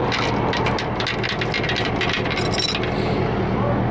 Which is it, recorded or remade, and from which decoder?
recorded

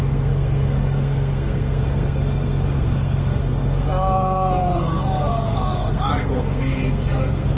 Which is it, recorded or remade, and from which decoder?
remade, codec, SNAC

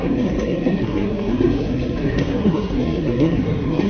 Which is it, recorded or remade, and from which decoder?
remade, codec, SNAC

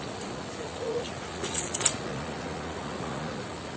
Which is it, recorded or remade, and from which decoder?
remade, vocoder, Vocos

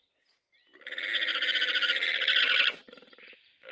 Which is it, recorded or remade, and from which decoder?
recorded